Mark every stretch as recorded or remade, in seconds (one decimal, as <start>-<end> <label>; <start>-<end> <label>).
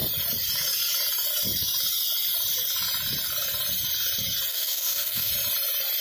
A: 0.0-4.5 recorded; 4.5-5.3 remade; 5.3-6.0 recorded